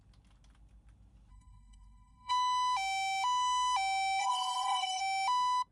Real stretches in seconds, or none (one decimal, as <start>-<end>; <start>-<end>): 0.0-1.3; 2.3-4.2; 5.0-5.7